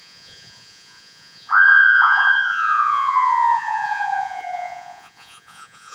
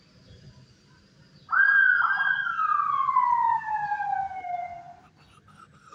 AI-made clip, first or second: first